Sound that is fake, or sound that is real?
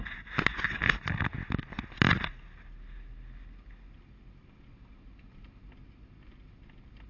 real